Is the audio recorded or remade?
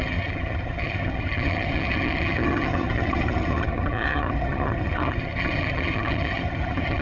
remade